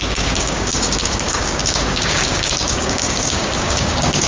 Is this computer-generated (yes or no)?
yes